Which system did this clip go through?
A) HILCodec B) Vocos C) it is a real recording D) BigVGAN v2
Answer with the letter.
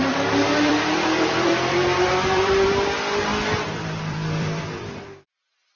D